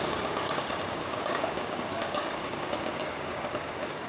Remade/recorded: remade